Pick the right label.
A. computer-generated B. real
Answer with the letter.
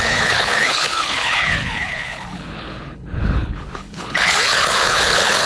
A